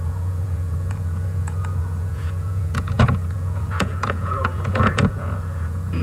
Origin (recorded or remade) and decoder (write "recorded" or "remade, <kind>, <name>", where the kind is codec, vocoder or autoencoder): remade, vocoder, Vocos